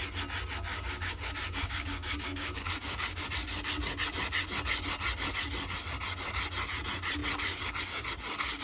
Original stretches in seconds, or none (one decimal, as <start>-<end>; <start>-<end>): 0.0-0.7; 3.2-8.6